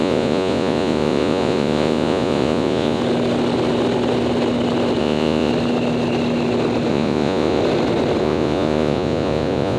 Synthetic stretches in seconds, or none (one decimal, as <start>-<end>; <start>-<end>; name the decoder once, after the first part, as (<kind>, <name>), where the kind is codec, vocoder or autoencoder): 0.0-3.0 (vocoder, Vocos); 5.0-5.5; 6.9-7.6; 8.2-9.8